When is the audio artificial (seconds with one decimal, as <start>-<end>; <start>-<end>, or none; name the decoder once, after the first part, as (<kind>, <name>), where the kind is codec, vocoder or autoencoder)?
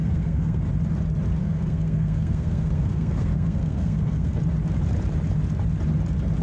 0.0-0.6 (codec, SNAC); 1.4-4.4